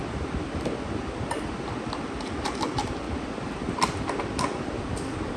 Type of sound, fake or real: real